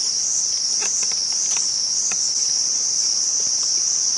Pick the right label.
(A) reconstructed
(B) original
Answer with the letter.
B